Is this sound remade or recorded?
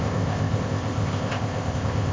remade